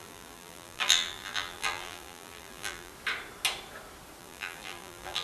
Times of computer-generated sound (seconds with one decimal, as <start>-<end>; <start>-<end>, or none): 0.0-2.9; 4.2-5.2